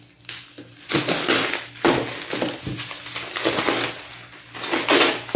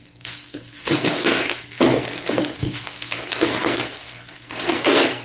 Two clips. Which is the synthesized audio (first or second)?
second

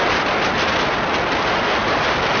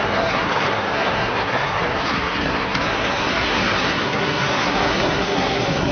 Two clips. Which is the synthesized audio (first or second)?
second